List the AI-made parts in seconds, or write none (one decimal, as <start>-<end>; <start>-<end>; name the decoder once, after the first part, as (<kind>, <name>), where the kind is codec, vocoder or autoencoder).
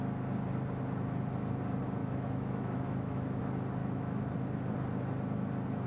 2.0-3.4 (autoencoder, DAC-VAE); 3.8-4.3